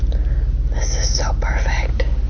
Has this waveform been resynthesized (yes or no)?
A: no